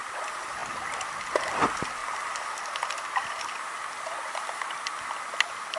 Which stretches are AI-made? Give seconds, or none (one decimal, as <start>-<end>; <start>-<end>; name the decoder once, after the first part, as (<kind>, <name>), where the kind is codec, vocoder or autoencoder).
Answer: none